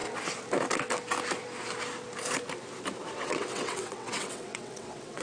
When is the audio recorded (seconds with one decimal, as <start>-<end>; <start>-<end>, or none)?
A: 0.0-3.1